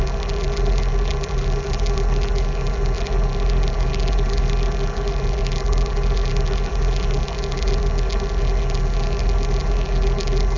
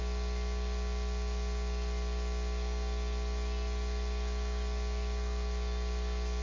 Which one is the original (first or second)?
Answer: second